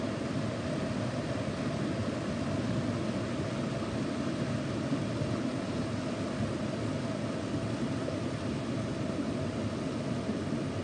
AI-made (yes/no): no